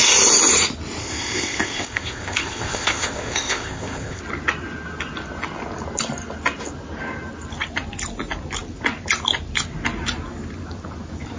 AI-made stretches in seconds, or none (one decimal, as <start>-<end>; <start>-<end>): 1.0-4.2